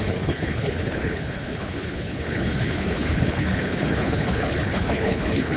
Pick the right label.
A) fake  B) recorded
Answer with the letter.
A